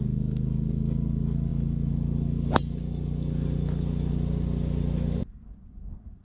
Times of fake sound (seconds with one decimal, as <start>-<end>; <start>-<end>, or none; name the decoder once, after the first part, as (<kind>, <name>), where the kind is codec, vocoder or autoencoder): none